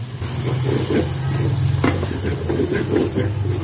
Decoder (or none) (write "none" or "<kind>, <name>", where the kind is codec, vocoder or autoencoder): none